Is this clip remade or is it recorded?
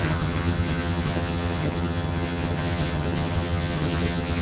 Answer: remade